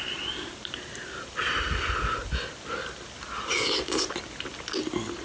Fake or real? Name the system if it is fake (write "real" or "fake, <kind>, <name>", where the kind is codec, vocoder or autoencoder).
real